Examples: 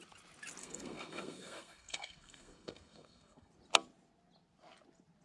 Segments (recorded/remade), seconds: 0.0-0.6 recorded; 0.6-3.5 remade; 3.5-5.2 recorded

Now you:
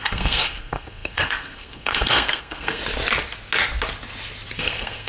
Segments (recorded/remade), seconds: 0.0-2.8 remade; 2.8-4.6 recorded; 4.6-5.1 remade